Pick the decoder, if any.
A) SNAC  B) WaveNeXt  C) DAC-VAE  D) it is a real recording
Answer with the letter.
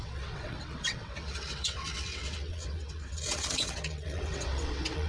B